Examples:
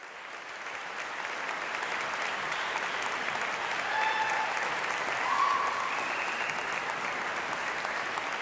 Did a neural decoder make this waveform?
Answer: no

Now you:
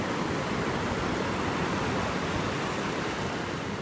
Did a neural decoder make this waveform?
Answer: no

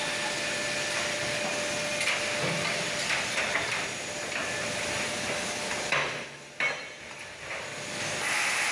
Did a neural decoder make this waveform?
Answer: no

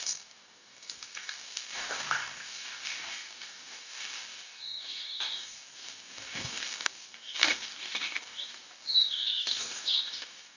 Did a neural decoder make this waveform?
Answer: yes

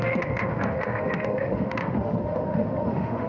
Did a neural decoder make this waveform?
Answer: yes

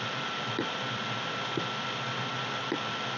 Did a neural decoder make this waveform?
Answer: no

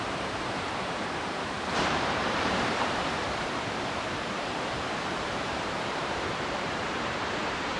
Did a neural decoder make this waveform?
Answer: yes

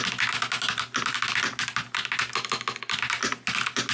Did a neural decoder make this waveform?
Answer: no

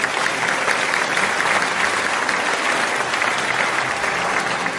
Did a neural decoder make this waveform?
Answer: no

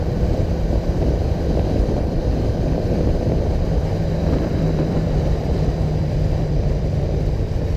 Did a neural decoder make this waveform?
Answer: yes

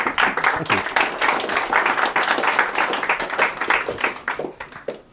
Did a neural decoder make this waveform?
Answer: no